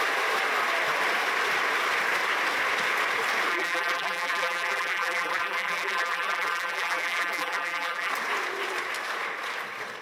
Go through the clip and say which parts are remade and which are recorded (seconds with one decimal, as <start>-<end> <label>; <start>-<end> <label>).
0.0-3.5 recorded; 3.5-8.1 remade; 8.1-10.0 recorded